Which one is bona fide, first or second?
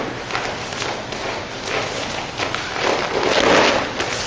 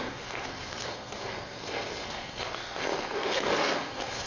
first